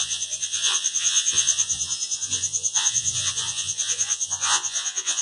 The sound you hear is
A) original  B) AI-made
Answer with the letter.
B